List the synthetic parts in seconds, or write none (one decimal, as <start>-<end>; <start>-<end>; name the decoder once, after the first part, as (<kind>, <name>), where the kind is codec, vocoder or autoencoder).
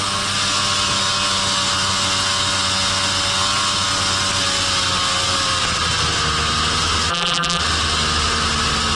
7.1-7.6 (vocoder, BigVGAN v2)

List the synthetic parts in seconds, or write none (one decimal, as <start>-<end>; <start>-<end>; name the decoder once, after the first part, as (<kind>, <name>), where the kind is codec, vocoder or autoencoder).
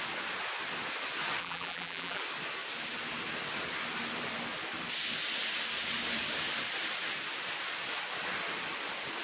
1.4-2.2 (vocoder, BigVGAN v2)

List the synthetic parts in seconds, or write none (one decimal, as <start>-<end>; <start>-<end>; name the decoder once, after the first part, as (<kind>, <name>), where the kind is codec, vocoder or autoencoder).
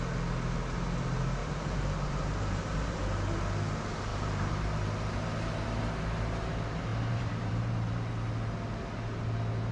1.4-3.0 (vocoder, BigVGAN v2); 4.1-5.2; 6.9-8.1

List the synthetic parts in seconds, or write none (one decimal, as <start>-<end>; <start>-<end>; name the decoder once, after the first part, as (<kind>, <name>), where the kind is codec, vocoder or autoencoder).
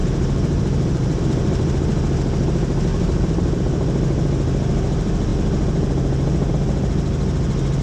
0.0-1.2 (vocoder, BigVGAN v2); 2.9-3.6